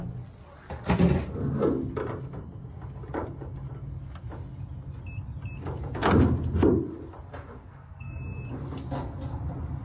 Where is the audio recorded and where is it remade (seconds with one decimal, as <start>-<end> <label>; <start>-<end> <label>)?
0.0-7.7 recorded; 7.7-8.2 remade; 8.2-9.8 recorded